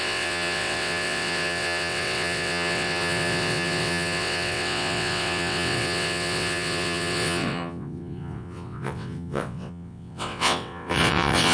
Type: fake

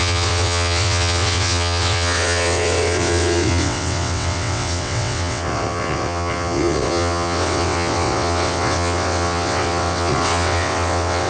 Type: fake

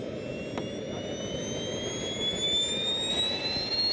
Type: real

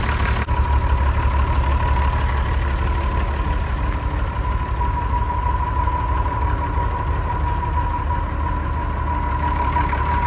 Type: real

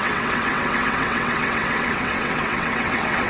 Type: fake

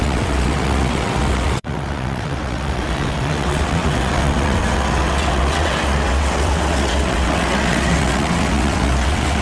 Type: fake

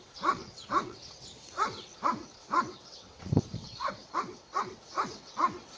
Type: fake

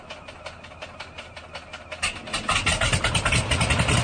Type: real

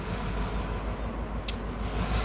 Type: real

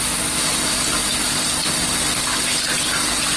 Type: real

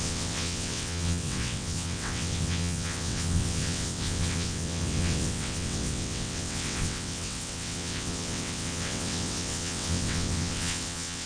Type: fake